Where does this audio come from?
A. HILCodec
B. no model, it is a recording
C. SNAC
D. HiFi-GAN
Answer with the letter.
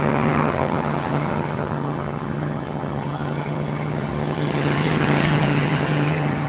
D